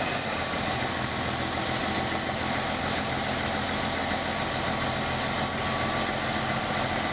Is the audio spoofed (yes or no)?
no